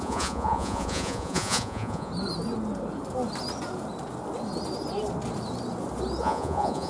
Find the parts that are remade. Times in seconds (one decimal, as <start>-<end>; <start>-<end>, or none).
0.0-2.1; 6.2-6.9